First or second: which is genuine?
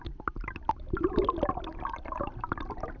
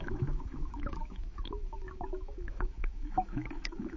first